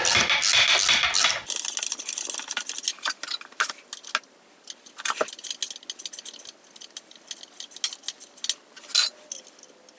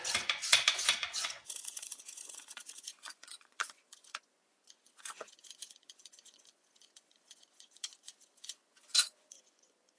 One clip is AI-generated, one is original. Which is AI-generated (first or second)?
second